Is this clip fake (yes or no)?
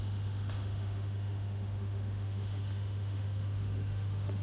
yes